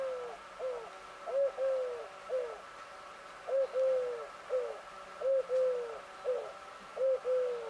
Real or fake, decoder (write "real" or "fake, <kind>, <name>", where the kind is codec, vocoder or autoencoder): real